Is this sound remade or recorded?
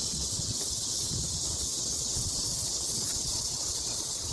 remade